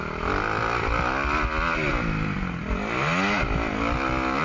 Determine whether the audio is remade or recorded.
recorded